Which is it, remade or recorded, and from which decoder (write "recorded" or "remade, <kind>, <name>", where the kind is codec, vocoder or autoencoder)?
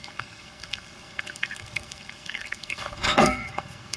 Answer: remade, codec, SNAC